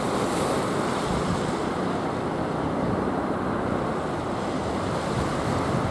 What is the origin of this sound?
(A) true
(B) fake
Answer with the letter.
A